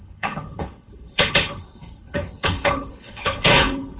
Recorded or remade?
remade